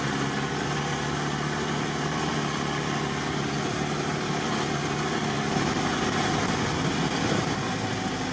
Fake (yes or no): no